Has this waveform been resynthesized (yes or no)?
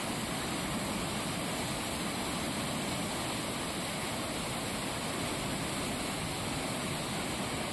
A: no